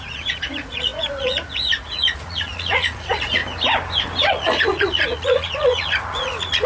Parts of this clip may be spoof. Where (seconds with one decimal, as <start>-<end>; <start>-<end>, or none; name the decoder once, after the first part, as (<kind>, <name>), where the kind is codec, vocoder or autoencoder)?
0.0-3.4 (vocoder, Vocos); 4.3-6.7